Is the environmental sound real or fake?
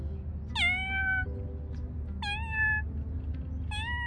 real